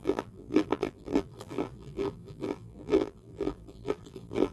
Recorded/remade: remade